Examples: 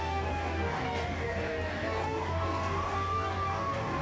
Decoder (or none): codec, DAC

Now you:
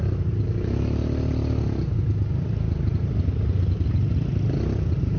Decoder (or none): none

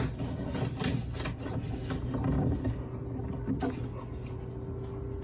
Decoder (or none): none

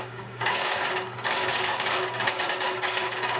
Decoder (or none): codec, DAC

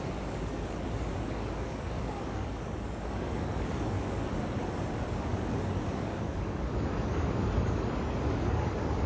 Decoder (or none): codec, DAC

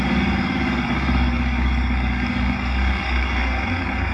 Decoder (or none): codec, DAC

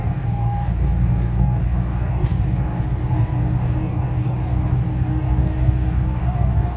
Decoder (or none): codec, DAC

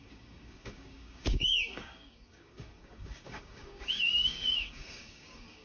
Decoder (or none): codec, DAC